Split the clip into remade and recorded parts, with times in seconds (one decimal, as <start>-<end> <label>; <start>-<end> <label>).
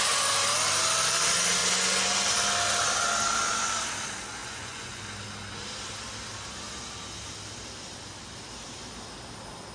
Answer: 0.0-4.4 recorded; 4.4-5.0 remade; 5.0-9.7 recorded